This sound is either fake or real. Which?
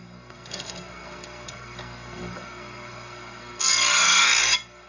fake